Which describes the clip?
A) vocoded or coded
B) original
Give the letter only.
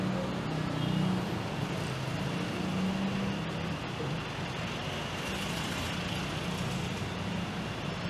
B